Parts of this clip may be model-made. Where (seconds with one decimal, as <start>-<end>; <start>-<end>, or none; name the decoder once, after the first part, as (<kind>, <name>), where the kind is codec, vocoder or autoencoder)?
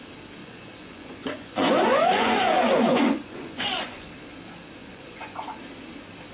0.4-4.1 (vocoder, Vocos); 4.8-5.6